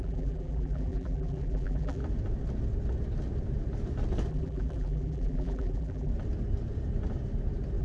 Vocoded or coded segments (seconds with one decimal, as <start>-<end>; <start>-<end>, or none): 0.0-2.0; 4.3-6.1